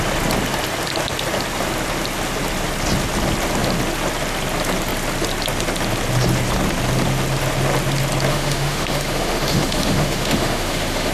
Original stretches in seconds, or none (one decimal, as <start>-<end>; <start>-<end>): 0.0-8.3